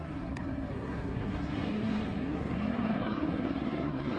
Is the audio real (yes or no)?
no